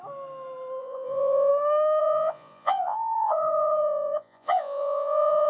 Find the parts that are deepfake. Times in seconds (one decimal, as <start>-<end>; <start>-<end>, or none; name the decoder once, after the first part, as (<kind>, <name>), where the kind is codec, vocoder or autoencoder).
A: 0.8-1.5 (vocoder, Vocos); 2.0-5.5